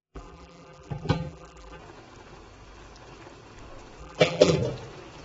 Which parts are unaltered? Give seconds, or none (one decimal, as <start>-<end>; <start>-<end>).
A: 1.8-4.0; 4.6-5.2